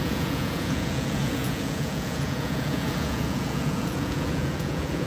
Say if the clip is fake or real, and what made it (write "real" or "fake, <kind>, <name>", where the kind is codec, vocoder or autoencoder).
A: fake, vocoder, Vocos